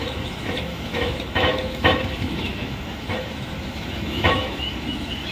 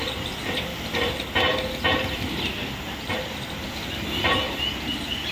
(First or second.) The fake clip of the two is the first